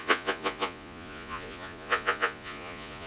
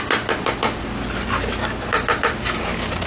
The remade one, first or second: first